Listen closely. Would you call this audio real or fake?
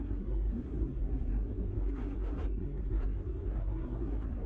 fake